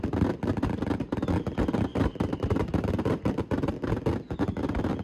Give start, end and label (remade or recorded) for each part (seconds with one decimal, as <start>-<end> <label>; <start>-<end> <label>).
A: 0.0-1.9 recorded; 1.9-2.9 remade; 2.9-5.0 recorded